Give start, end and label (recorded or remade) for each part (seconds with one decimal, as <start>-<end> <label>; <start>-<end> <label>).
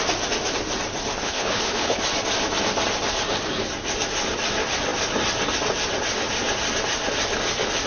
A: 0.0-1.2 recorded; 1.2-2.0 remade; 2.0-7.9 recorded